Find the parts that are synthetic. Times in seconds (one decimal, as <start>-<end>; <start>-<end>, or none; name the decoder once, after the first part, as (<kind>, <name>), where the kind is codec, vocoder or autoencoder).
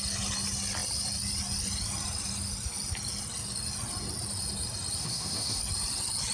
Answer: 5.0-5.6 (codec, SNAC)